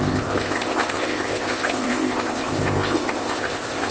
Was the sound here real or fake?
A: fake